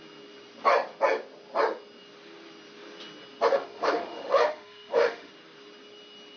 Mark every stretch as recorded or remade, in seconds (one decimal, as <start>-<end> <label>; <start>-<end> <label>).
0.0-3.5 recorded; 3.5-5.3 remade; 5.3-6.4 recorded